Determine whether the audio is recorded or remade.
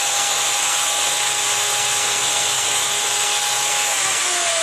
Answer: remade